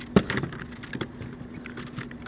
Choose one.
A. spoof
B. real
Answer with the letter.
B